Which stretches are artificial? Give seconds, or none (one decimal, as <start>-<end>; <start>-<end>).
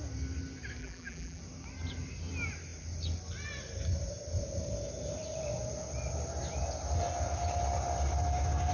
0.8-1.4